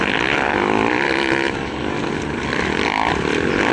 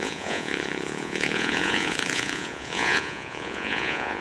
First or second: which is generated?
second